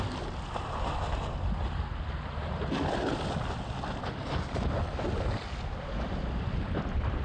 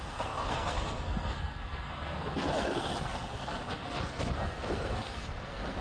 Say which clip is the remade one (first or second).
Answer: second